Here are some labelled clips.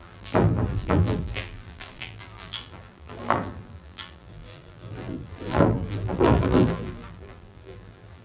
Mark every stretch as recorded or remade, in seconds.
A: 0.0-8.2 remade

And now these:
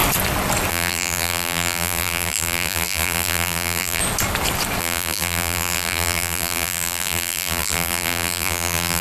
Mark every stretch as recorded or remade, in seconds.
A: 0.0-0.7 recorded; 0.7-4.0 remade; 4.0-4.8 recorded; 4.8-9.0 remade